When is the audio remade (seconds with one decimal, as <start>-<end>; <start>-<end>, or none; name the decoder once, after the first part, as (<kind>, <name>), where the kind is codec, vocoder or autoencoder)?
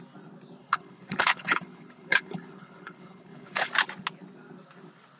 0.6-3.7 (codec, HILCodec)